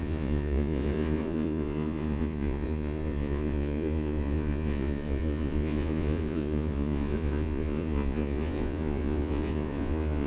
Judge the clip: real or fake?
fake